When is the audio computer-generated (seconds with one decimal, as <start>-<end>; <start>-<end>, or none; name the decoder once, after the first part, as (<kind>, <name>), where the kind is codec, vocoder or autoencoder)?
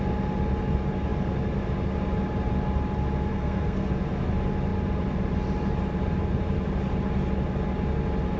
3.3-3.9 (codec, SNAC)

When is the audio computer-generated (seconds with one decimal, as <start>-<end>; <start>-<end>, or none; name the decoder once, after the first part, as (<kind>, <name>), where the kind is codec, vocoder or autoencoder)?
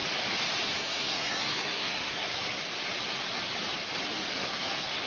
0.8-2.6 (codec, SNAC); 4.3-5.1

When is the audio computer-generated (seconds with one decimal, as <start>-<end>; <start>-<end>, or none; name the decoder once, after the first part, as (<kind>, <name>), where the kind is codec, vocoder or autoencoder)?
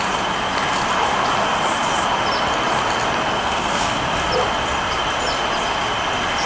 3.3-3.9 (codec, SNAC)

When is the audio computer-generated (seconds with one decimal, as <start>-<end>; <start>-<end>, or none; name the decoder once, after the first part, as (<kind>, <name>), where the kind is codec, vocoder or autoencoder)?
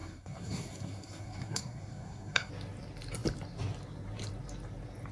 0.0-2.5 (codec, SNAC)